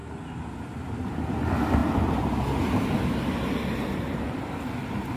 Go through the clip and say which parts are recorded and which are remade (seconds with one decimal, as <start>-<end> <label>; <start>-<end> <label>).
0.0-5.2 recorded

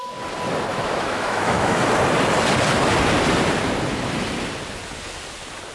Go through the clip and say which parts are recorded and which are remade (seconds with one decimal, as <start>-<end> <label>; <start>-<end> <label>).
0.0-0.7 recorded; 0.7-1.9 remade; 1.9-5.7 recorded

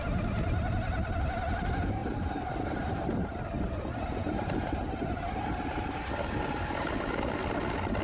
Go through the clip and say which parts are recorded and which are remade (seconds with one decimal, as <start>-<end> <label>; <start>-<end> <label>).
0.0-8.0 recorded

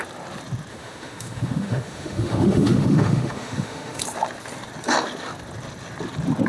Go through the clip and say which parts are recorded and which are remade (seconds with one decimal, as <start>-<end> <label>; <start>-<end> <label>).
0.0-0.7 recorded; 0.7-4.0 remade; 4.0-6.5 recorded

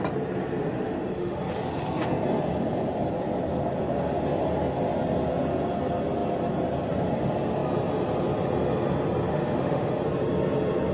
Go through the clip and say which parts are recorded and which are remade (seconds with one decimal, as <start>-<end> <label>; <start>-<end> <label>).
0.0-0.6 recorded; 0.6-1.4 remade; 1.4-9.3 recorded; 9.3-9.9 remade; 9.9-10.9 recorded

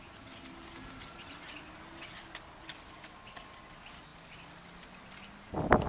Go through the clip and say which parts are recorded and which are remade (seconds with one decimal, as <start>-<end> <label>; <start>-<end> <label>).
0.0-5.9 recorded